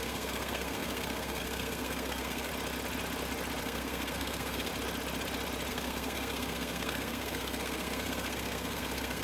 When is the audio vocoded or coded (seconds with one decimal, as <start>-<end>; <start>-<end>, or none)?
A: 0.0-2.5; 3.6-4.7; 5.7-9.2